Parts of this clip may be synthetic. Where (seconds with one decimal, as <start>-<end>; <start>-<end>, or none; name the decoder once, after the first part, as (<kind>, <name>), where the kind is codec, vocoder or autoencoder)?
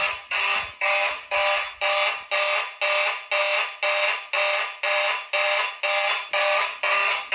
none